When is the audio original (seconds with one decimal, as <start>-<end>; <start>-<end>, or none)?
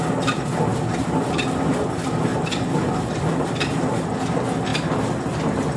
0.0-2.3; 3.1-5.8